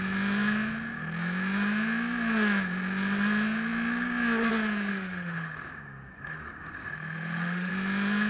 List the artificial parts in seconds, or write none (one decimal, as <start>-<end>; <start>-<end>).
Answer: 4.9-7.7